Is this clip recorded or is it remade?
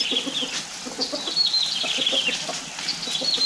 recorded